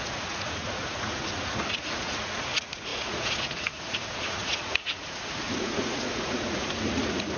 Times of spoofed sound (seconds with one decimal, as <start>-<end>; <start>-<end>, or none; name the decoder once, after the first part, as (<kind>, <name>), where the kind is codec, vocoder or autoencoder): 0.0-7.4 (vocoder, Vocos)